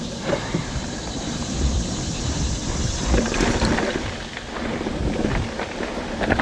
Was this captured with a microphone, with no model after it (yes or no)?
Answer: no